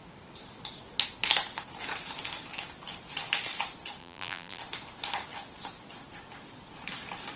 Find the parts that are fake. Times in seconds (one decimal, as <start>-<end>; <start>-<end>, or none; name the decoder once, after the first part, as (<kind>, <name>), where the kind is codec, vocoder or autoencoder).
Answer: 4.0-4.6 (vocoder, BigVGAN v2)

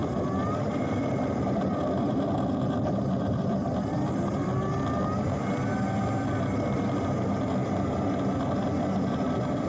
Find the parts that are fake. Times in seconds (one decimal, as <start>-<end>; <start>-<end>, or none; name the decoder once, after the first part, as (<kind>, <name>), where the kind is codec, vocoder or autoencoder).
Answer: 0.0-4.7 (vocoder, BigVGAN v2)

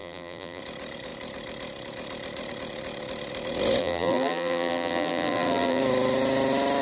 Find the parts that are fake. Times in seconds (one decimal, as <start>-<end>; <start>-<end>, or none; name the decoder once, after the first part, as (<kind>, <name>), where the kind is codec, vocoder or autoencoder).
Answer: 0.0-0.6 (vocoder, BigVGAN v2); 3.8-5.8

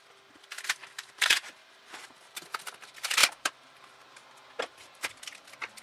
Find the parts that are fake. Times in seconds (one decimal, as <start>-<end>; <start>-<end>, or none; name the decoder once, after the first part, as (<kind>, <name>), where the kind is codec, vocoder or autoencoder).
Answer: 0.8-2.6 (vocoder, BigVGAN v2); 3.2-5.2

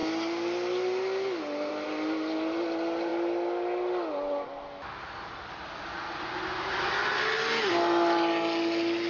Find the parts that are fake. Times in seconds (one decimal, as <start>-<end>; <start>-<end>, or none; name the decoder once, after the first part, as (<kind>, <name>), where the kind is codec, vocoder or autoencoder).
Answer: none

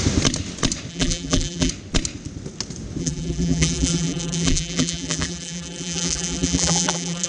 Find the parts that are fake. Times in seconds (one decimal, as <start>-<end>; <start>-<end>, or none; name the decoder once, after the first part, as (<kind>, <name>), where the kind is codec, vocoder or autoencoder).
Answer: 0.9-1.7 (vocoder, BigVGAN v2); 3.0-7.3